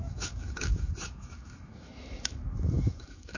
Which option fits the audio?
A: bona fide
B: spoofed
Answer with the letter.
B